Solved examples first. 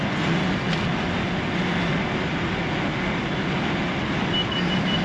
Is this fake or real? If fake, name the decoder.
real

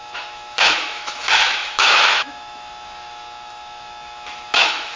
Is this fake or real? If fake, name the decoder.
fake, autoencoder, DAC-VAE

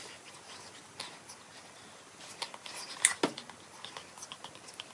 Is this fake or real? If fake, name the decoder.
real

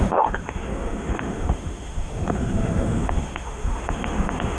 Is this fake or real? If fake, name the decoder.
fake, autoencoder, DAC-VAE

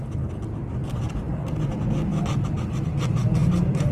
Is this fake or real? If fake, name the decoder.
real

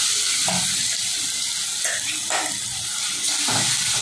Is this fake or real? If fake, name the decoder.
real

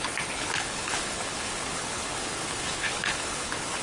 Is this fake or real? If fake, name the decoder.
fake, codec, HILCodec